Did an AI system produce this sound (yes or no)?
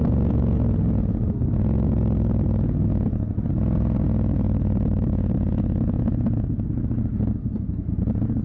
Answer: no